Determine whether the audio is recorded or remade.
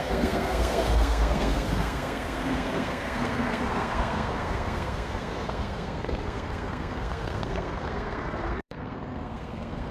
remade